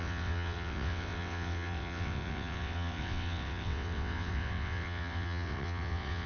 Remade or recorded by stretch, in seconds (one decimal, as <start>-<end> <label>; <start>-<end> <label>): 0.0-6.3 remade